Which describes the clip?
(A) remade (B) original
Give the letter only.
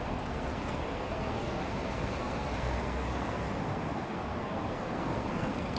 A